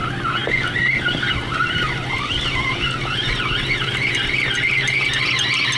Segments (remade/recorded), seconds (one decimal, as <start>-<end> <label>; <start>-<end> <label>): 0.0-5.8 recorded